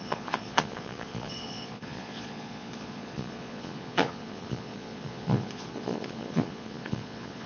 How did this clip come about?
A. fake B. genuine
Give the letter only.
A